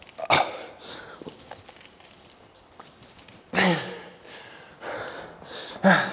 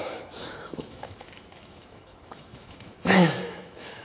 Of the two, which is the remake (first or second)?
second